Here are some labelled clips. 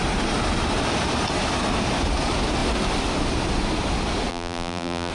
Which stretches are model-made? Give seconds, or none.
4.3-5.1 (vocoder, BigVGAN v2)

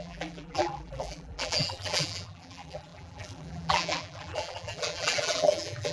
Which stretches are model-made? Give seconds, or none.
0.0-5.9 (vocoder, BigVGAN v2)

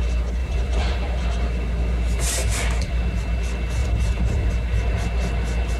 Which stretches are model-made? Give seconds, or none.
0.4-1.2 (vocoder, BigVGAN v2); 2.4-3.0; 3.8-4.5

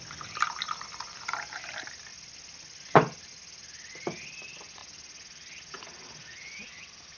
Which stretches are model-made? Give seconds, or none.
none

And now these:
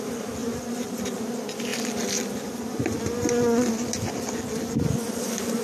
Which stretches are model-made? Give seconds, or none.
0.4-1.0 (vocoder, BigVGAN v2)